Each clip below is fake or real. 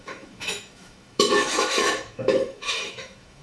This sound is fake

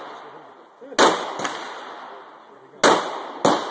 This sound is real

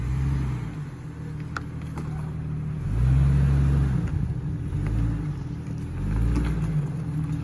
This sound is real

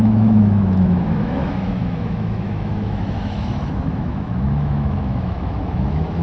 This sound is fake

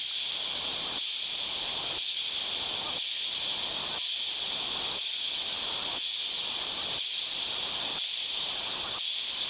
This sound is real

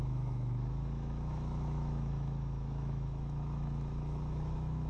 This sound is fake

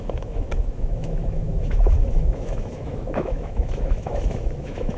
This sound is fake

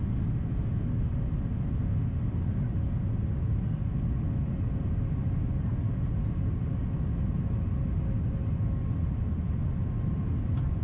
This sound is real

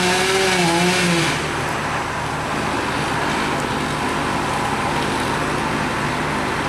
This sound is real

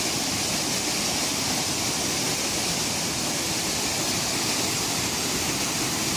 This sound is real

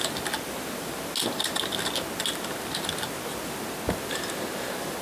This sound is real